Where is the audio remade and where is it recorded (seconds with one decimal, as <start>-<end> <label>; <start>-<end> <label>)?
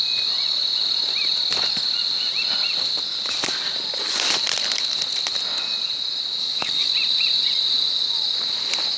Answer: 0.0-6.4 recorded; 6.4-6.9 remade; 6.9-9.0 recorded